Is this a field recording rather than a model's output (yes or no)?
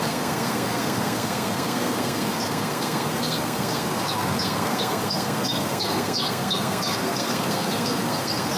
no